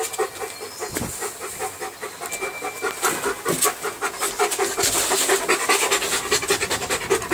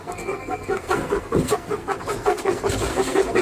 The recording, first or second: first